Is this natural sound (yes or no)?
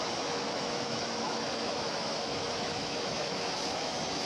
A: no